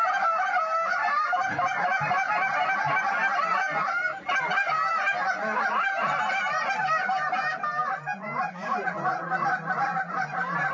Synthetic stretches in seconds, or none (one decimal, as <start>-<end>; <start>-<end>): none